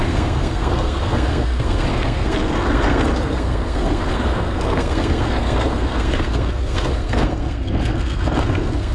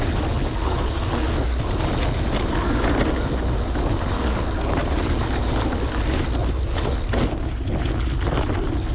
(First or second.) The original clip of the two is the second